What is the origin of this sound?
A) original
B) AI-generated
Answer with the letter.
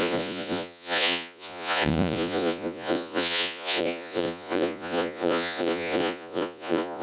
B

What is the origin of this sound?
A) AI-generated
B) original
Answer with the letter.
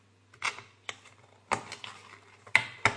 B